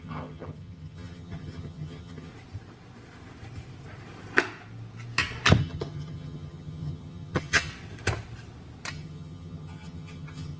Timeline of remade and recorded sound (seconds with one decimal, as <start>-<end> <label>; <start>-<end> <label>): 0.0-2.3 remade; 2.3-5.6 recorded; 5.6-7.7 remade; 7.7-8.9 recorded; 8.9-10.6 remade